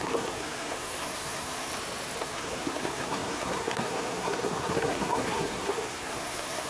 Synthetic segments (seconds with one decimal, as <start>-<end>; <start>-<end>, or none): 0.0-1.7; 2.2-6.7